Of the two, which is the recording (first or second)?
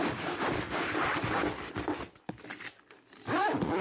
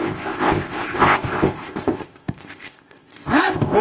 first